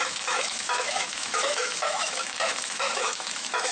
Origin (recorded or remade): remade